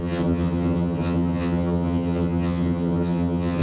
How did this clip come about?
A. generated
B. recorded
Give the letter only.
A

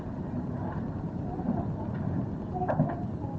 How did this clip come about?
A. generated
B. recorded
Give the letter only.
B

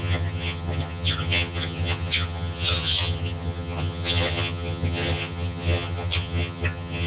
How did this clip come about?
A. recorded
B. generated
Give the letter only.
B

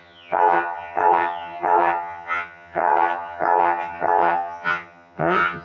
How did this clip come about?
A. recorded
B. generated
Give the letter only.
B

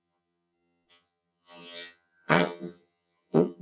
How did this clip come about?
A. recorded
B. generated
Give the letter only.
B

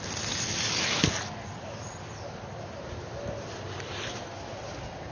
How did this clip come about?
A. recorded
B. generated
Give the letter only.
A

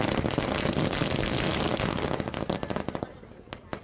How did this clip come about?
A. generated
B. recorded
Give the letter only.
B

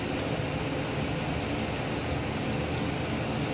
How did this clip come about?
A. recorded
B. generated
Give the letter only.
A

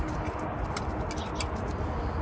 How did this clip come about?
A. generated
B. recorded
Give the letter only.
B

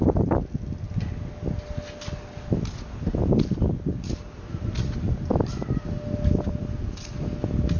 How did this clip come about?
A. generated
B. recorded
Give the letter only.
B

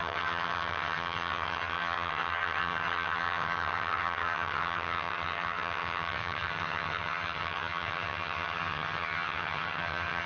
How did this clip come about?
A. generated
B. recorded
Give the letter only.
A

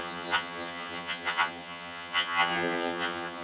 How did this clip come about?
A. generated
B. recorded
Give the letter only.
A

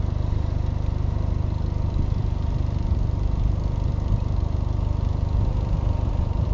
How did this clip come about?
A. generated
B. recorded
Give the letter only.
B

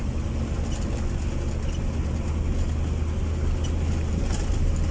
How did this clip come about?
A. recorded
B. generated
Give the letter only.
A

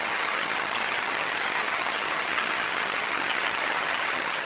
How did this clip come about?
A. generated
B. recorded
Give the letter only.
A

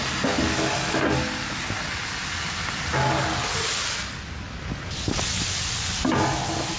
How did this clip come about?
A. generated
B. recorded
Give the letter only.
B